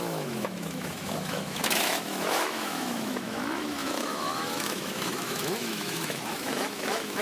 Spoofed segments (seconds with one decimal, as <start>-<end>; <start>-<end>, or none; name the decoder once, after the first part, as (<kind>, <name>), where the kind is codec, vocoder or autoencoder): 0.0-7.2 (autoencoder, DAC-VAE)